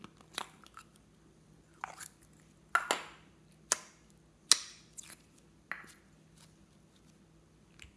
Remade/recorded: recorded